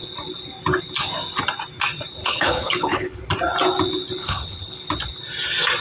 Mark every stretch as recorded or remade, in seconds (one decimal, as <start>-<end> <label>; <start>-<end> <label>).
0.0-2.2 recorded; 2.2-3.2 remade; 3.2-4.2 recorded; 4.2-4.9 remade; 4.9-5.8 recorded